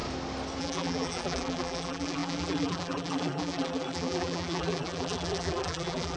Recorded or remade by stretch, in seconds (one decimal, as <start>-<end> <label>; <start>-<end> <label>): 0.0-0.6 recorded; 0.6-6.2 remade